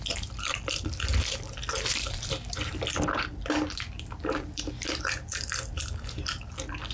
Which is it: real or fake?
real